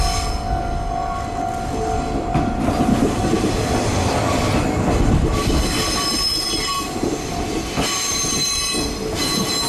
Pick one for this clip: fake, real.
real